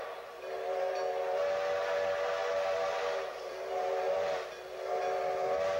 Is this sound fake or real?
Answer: real